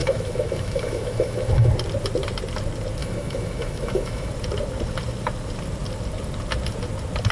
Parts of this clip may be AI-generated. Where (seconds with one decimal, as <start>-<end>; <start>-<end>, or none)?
0.0-1.7; 3.0-4.3